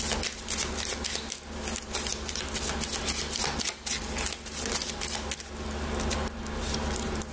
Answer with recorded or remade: recorded